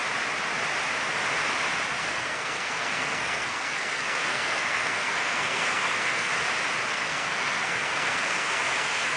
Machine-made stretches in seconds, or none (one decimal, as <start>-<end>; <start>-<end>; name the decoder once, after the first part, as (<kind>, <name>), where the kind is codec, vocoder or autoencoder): 2.0-6.3 (codec, SNAC); 6.9-9.2